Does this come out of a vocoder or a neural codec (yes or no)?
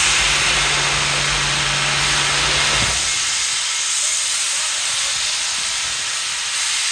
no